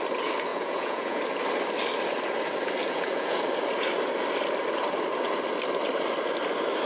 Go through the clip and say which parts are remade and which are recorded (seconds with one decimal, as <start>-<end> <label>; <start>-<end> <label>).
0.0-0.5 recorded; 0.5-1.2 remade; 1.2-2.8 recorded; 2.8-3.4 remade; 3.4-6.9 recorded